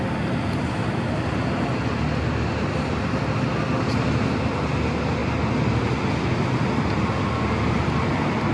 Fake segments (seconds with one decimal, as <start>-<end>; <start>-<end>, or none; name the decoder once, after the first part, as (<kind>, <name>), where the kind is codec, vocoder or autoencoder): none